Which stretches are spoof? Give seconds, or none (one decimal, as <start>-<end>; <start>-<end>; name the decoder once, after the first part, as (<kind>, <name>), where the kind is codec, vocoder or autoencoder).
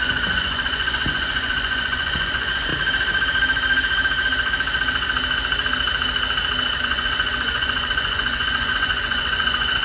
0.0-2.7 (vocoder, Vocos); 6.8-9.8